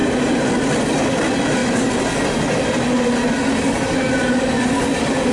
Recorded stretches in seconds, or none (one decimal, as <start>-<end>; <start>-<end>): 0.5-5.3